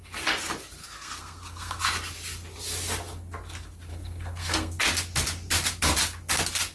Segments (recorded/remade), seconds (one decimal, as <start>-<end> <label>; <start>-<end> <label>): 0.0-0.8 recorded; 0.8-1.8 remade; 1.8-3.9 recorded; 3.9-4.8 remade; 4.8-6.7 recorded